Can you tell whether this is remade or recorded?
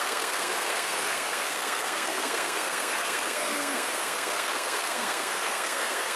remade